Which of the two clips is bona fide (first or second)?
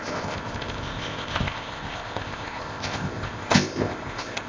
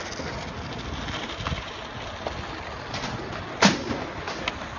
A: second